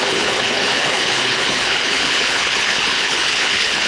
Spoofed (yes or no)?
yes